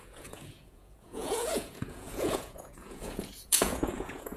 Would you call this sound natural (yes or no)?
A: no